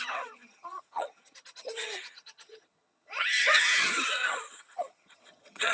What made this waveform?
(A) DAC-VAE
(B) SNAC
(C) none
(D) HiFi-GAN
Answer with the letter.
D